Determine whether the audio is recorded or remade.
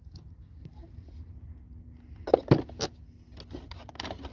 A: recorded